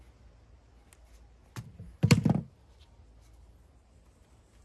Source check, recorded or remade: recorded